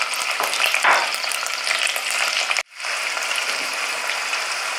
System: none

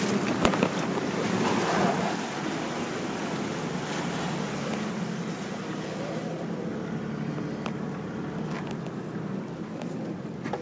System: none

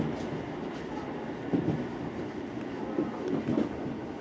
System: none